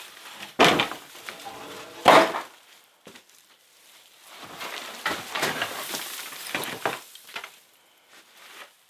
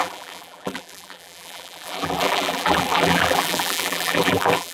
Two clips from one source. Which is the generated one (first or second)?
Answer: second